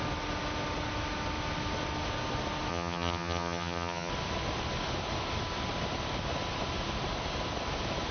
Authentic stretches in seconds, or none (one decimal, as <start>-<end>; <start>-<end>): 0.0-2.7; 4.1-8.1